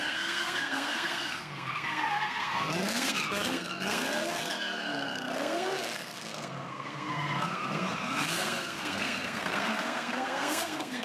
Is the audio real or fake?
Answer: fake